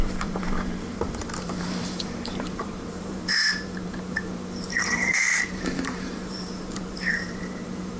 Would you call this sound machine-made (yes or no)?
yes